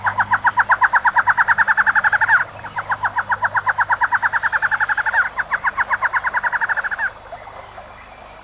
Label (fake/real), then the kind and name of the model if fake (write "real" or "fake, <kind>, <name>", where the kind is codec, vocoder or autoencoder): real